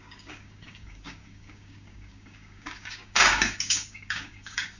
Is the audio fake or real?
fake